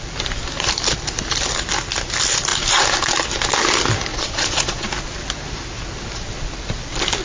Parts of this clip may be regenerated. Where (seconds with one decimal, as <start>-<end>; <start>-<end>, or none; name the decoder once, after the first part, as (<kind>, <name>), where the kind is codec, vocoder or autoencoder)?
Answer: 4.1-4.9 (vocoder, Vocos)